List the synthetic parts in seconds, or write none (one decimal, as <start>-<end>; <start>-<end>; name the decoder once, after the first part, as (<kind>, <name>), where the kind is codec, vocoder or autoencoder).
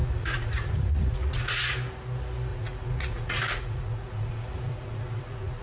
0.0-1.6 (vocoder, Vocos); 2.5-5.6